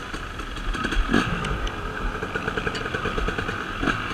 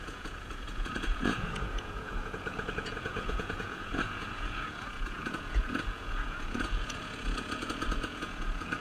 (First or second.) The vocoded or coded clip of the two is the second